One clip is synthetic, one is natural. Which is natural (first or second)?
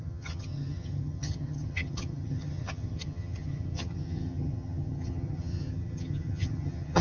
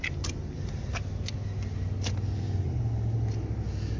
second